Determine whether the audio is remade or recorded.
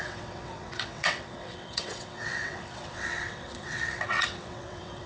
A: remade